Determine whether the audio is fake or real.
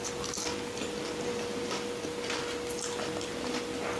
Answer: real